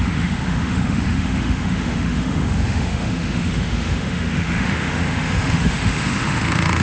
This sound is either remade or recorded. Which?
remade